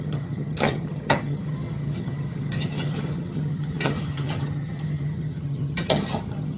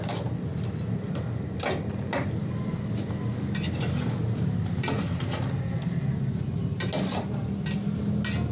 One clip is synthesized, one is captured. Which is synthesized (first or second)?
first